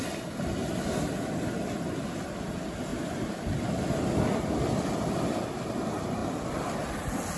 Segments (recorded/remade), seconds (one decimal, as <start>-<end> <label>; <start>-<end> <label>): 0.0-2.9 recorded; 2.9-5.1 remade; 5.1-6.2 recorded; 6.2-6.9 remade; 6.9-7.4 recorded